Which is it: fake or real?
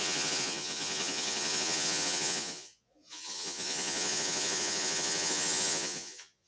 fake